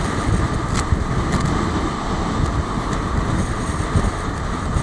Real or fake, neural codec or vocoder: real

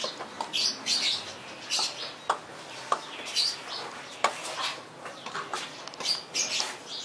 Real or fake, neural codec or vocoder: real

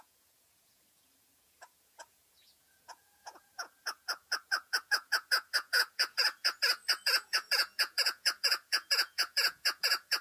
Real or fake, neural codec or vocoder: fake, vocoder, Vocos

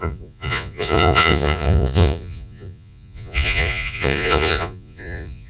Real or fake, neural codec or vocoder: fake, vocoder, Vocos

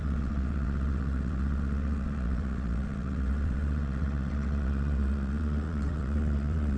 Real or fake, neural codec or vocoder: fake, vocoder, WaveNeXt